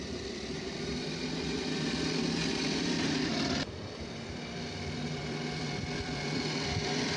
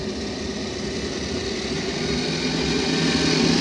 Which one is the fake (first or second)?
first